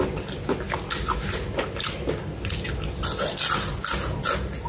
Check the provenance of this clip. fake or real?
real